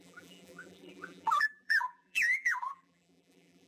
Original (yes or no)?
no